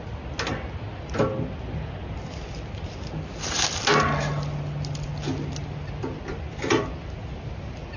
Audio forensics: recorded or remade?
recorded